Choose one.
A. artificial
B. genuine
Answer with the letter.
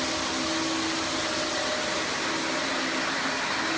B